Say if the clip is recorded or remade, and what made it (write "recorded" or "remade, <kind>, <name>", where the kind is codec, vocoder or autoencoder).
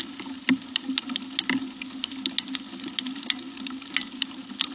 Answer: recorded